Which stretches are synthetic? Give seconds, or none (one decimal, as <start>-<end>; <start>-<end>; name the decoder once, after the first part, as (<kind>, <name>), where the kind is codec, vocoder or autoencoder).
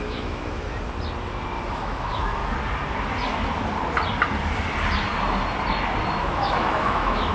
0.0-0.7 (autoencoder, DAC-VAE); 1.7-2.4; 6.2-7.3